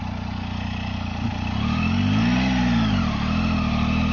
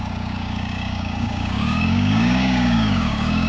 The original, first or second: first